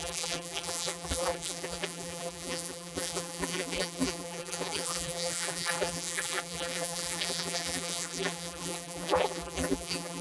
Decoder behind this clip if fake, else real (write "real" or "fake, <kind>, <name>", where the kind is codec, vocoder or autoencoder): fake, vocoder, BigVGAN v2